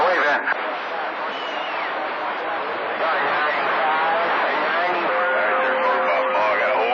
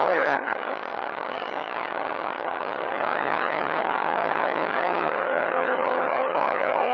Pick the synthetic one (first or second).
second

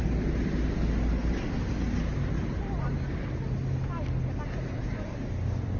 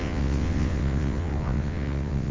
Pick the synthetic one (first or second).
second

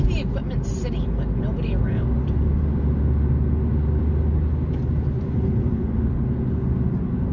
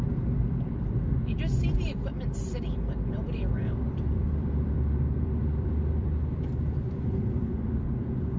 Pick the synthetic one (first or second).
second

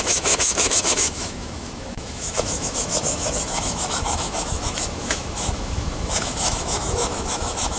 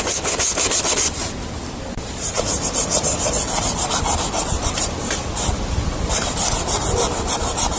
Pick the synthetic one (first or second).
first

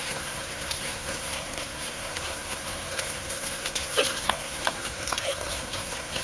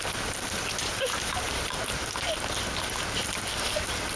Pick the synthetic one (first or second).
first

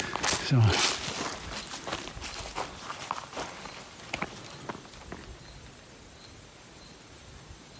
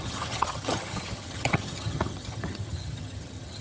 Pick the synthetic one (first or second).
second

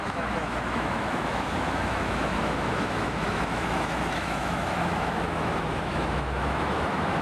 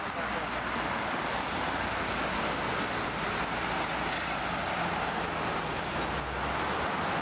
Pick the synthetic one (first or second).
first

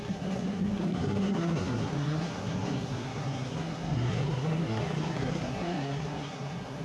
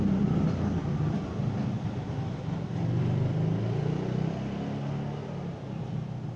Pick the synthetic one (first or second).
first